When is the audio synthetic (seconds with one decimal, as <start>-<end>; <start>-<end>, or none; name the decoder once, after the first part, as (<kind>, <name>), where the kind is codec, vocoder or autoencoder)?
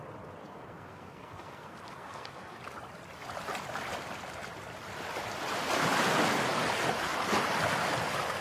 0.4-2.6 (codec, SNAC)